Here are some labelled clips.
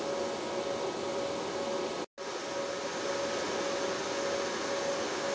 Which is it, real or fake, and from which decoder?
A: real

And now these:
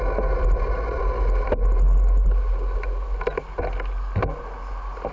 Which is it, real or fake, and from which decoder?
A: real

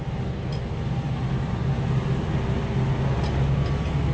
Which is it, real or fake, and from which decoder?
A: real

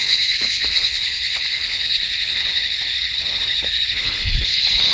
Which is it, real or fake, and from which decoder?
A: fake, codec, HILCodec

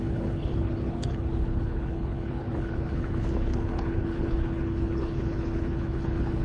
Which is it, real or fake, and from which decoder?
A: fake, codec, HILCodec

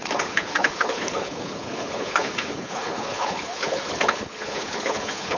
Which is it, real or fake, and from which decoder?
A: fake, codec, HILCodec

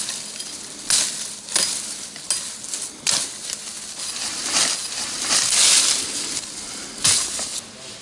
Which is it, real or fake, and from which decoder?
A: real